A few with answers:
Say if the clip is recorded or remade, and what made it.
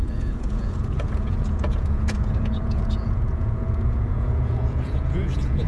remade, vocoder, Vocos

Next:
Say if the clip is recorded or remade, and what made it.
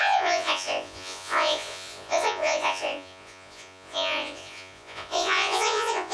remade, vocoder, Vocos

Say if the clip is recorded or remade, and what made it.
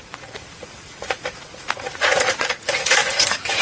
remade, vocoder, Vocos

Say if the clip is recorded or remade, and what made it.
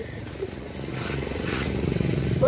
remade, vocoder, Vocos